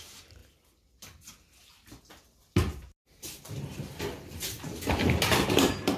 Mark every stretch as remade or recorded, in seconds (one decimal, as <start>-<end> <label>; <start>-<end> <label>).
0.0-5.3 recorded; 5.3-6.0 remade

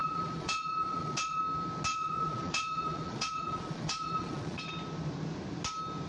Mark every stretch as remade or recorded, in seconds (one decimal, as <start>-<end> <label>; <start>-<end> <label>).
0.0-1.4 remade; 1.4-1.9 recorded; 1.9-4.7 remade; 4.7-6.1 recorded